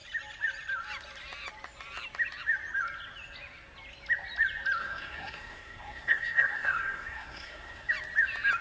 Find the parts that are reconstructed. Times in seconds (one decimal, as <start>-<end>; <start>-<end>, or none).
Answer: 4.8-7.9